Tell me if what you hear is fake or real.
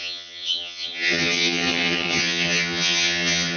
fake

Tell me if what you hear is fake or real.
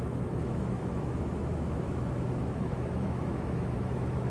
fake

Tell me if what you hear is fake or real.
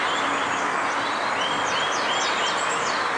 real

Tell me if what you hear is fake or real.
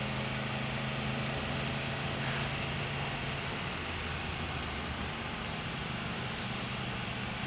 real